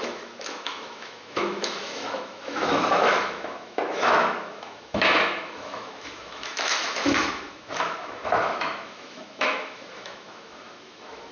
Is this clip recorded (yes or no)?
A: no